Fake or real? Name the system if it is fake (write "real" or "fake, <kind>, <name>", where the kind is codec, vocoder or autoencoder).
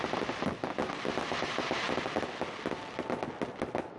real